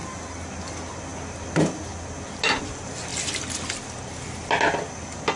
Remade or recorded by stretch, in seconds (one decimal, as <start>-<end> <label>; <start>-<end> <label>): 0.0-0.6 remade; 0.6-5.4 recorded